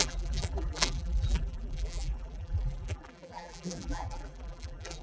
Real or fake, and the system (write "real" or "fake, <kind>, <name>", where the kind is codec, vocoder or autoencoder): fake, vocoder, BigVGAN v2